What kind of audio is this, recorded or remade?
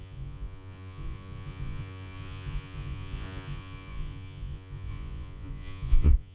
remade